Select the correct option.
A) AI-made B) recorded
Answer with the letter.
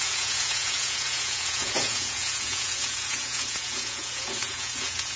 A